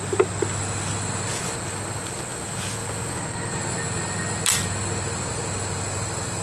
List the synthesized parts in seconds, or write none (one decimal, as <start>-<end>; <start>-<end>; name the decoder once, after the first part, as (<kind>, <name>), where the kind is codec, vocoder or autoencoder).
2.3-3.1 (vocoder, Vocos)